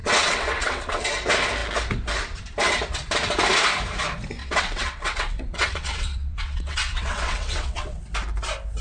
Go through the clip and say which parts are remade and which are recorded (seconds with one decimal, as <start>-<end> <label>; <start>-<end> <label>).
0.0-1.0 remade; 1.0-4.4 recorded; 4.4-8.0 remade; 8.0-8.8 recorded